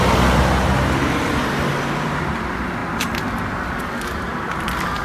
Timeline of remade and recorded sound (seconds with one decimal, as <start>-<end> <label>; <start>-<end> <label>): 0.0-5.0 recorded